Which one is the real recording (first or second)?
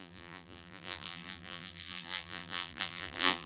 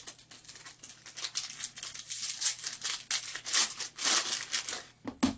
second